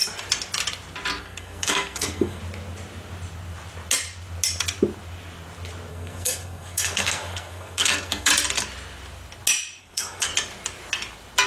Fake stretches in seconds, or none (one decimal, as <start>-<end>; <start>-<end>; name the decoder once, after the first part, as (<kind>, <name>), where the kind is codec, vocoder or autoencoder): 1.2-2.4 (codec, SNAC); 5.9-8.3; 9.8-10.3